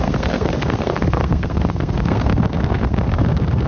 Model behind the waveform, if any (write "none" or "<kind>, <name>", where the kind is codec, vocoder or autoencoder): codec, SNAC